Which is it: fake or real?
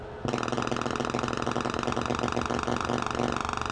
real